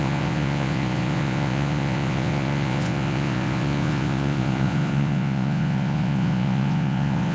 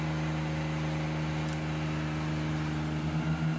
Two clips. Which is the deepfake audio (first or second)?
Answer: first